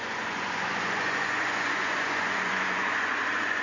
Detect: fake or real fake